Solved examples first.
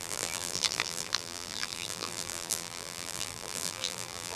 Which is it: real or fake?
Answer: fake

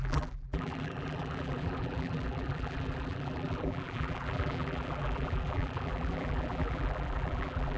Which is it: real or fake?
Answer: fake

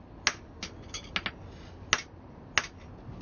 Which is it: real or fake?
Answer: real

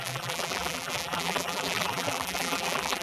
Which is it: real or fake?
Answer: fake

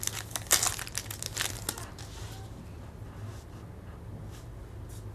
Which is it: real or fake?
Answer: real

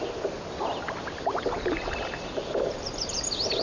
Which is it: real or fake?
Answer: fake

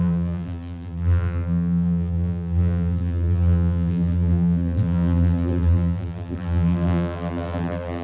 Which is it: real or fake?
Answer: fake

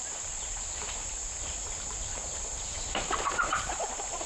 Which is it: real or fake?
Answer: fake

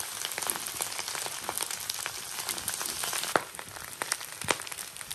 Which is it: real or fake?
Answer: real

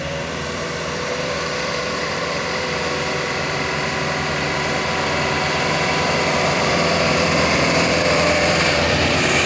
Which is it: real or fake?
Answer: fake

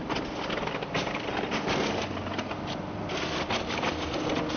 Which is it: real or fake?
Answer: real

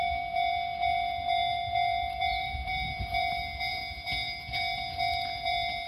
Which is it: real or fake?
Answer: fake